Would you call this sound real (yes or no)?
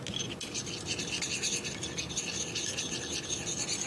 yes